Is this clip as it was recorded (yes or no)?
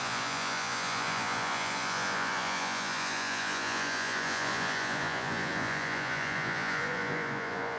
no